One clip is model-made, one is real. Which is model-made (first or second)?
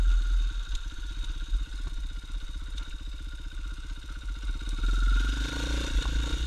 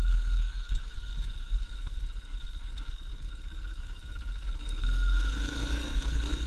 second